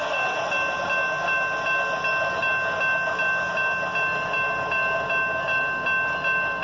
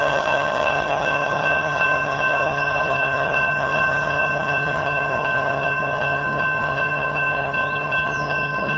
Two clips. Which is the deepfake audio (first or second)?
second